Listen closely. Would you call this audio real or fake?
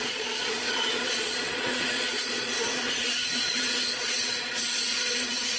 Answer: fake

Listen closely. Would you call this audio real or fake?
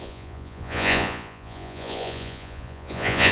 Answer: fake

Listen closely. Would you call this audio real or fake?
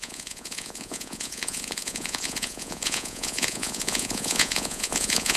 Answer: fake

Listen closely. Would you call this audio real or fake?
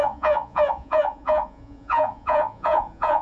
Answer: fake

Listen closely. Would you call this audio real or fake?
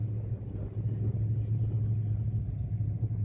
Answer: real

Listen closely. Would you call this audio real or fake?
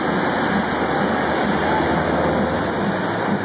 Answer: real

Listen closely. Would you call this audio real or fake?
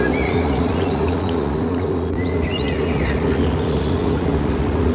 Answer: fake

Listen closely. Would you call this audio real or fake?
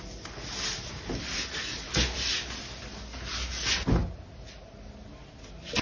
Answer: real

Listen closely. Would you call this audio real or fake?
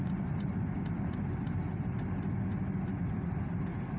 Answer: real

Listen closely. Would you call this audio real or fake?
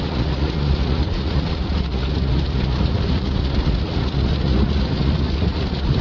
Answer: fake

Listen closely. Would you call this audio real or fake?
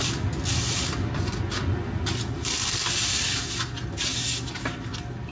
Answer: real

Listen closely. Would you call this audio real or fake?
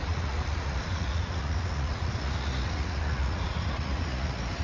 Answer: fake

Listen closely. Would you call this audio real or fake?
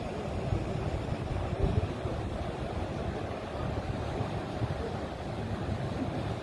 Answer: real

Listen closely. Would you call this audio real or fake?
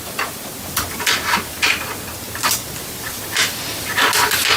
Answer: real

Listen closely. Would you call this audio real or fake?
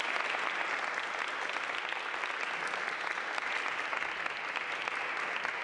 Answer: real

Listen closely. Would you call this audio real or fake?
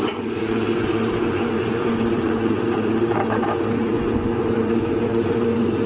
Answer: fake